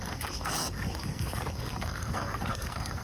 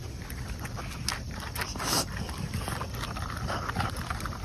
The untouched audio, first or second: second